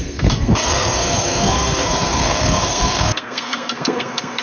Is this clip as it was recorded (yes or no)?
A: no